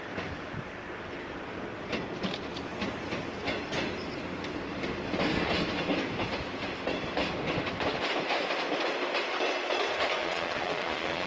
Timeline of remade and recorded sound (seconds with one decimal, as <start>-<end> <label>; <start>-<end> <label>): 0.0-10.2 recorded; 10.2-11.3 remade